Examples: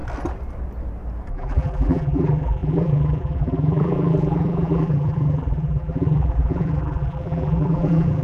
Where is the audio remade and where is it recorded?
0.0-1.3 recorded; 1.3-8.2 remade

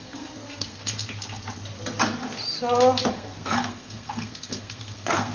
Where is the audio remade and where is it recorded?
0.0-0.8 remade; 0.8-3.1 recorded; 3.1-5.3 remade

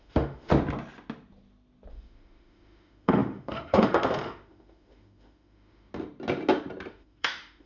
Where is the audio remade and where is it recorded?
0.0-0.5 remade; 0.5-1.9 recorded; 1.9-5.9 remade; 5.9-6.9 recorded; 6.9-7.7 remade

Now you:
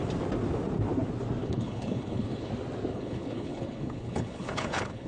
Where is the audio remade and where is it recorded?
0.0-1.4 recorded; 1.4-2.5 remade; 2.5-2.9 recorded; 2.9-5.1 remade

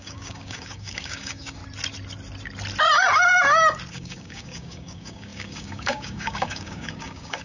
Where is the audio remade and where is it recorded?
0.0-1.6 remade; 1.6-3.9 recorded; 3.9-7.4 remade

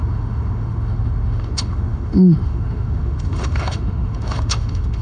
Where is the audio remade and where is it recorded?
0.0-5.0 remade

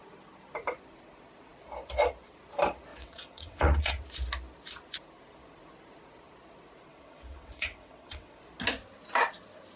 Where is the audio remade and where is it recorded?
0.0-2.9 recorded; 2.9-4.0 remade; 4.0-6.9 recorded; 6.9-8.4 remade; 8.4-9.8 recorded